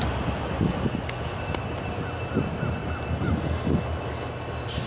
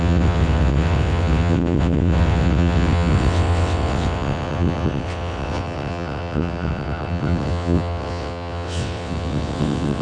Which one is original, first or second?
first